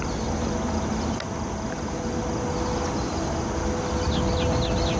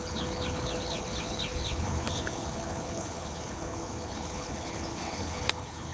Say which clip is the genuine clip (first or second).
first